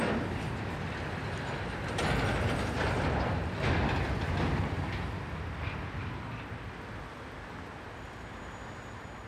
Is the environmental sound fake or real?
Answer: real